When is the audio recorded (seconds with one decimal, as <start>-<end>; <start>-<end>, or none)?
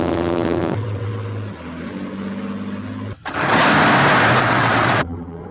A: 1.1-4.4